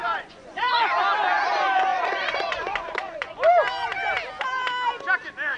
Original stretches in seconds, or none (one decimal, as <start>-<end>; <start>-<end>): 0.8-1.9; 3.3-5.6